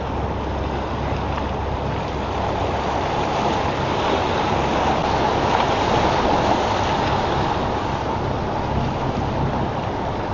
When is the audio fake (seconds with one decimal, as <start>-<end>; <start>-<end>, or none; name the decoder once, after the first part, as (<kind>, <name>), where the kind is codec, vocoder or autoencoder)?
none